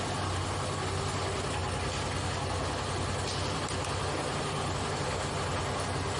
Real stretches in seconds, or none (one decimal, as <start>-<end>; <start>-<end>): 0.0-6.2